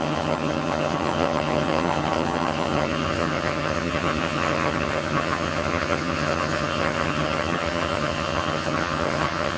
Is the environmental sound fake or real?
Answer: fake